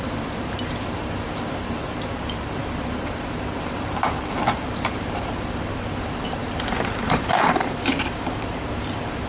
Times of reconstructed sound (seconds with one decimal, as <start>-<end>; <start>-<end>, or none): 0.0-9.3